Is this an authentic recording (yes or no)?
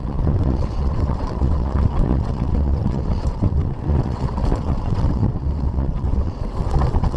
no